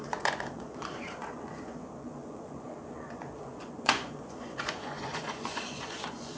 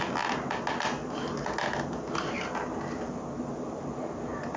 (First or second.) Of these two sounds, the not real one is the first